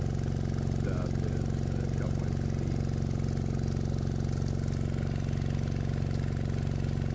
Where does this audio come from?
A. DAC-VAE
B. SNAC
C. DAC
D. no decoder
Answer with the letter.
D